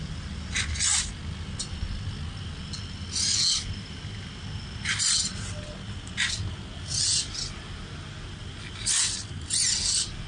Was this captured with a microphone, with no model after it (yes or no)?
yes